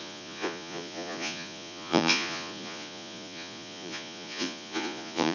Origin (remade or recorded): remade